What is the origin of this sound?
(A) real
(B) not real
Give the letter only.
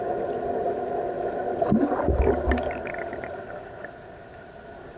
A